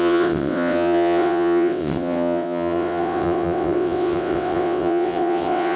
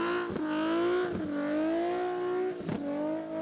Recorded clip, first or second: second